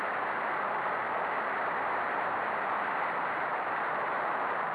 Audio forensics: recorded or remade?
remade